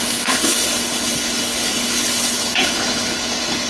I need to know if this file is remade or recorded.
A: remade